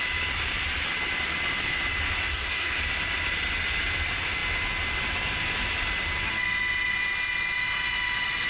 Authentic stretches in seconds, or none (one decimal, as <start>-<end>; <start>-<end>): 0.0-2.3; 2.8-8.5